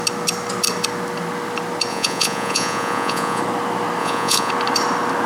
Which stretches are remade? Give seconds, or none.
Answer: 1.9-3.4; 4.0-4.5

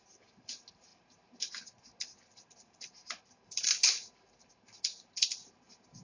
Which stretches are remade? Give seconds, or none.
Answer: none